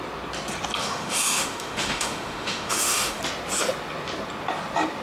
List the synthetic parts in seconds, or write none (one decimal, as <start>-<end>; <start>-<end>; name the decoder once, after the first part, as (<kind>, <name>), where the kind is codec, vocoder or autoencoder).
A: 0.8-3.2 (autoencoder, DAC-VAE)